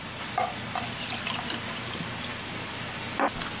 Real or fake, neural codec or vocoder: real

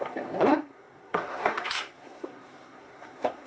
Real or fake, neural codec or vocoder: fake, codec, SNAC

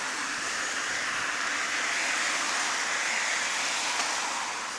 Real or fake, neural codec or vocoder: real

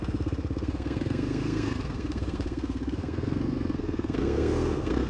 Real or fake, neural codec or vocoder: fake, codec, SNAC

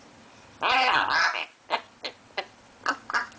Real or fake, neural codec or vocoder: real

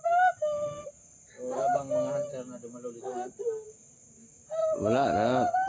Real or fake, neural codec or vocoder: real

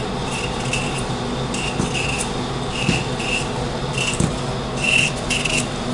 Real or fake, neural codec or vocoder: real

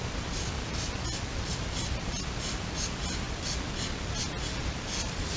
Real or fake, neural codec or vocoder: real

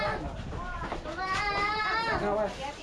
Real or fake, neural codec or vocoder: real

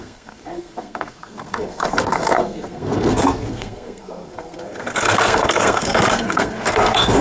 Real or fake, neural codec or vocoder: fake, codec, SNAC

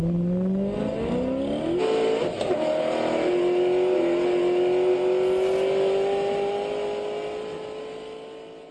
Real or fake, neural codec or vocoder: real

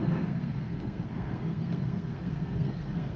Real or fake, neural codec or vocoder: fake, codec, SNAC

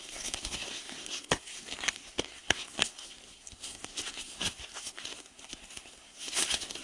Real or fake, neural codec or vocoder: fake, codec, SNAC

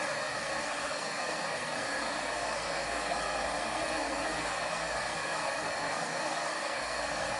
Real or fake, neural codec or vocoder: fake, codec, SNAC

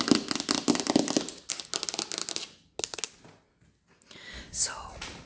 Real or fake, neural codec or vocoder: real